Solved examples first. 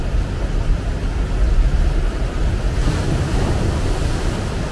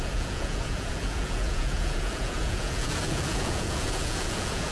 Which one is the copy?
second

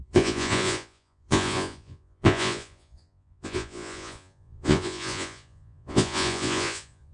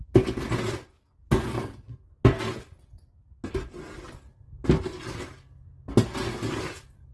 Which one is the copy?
first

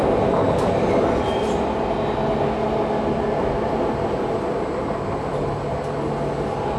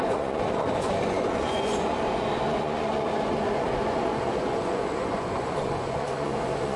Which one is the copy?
second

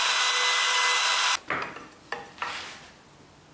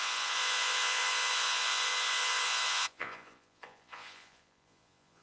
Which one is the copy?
second